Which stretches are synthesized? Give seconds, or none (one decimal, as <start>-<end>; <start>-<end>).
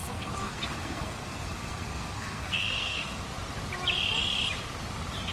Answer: 0.0-3.2